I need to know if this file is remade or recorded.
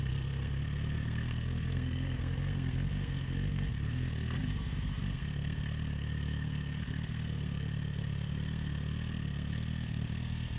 remade